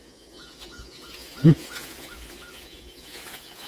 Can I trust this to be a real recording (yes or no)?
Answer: no